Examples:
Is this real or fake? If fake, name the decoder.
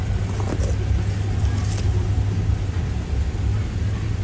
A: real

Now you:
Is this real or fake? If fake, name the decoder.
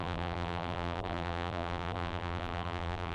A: fake, vocoder, BigVGAN v2